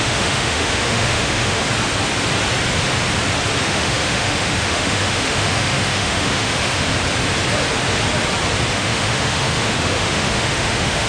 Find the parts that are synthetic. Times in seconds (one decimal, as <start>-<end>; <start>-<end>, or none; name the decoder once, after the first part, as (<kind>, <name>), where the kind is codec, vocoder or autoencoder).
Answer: 0.0-1.6 (autoencoder, DAC-VAE); 3.6-6.9; 8.7-11.1